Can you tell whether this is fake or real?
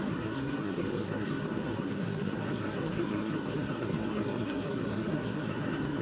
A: fake